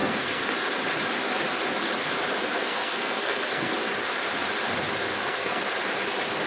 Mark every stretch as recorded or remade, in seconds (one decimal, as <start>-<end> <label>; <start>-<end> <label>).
0.0-0.5 remade; 0.5-2.4 recorded; 2.4-3.7 remade; 3.7-5.1 recorded; 5.1-5.6 remade; 5.6-6.5 recorded